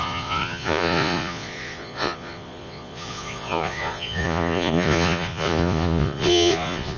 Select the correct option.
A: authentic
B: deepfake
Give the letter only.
B